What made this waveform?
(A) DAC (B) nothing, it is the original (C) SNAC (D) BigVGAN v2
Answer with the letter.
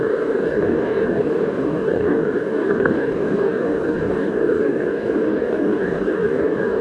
A